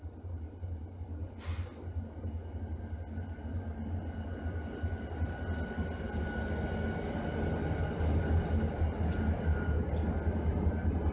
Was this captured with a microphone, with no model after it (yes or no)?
yes